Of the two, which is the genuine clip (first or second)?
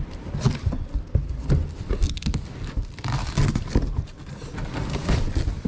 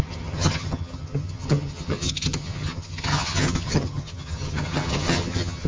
first